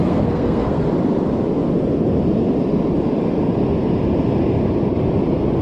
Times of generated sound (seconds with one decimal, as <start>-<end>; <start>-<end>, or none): 0.0-0.8